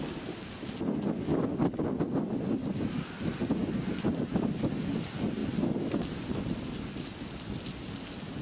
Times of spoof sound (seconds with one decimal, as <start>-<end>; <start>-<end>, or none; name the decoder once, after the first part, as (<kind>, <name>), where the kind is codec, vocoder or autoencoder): none